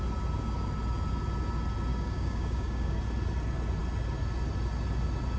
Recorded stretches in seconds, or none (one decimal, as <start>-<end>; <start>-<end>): 0.0-1.9; 3.0-5.4